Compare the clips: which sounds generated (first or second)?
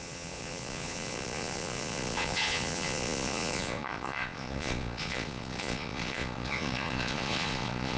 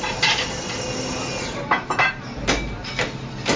first